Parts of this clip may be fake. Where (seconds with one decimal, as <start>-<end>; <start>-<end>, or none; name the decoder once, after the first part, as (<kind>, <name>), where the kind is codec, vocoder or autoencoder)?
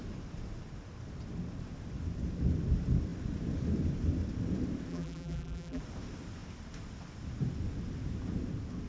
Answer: 4.9-5.8 (vocoder, BigVGAN v2)